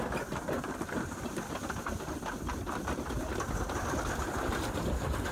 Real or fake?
real